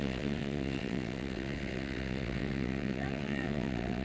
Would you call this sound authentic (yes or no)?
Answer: no